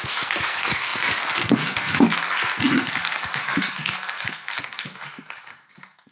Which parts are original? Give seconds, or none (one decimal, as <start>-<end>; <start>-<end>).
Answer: none